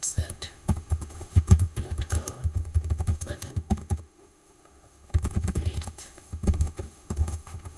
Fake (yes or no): yes